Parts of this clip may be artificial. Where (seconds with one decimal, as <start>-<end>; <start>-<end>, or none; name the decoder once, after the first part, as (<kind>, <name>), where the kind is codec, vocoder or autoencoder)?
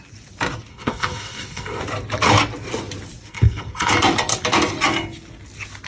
0.7-1.8 (codec, SNAC); 3.3-3.9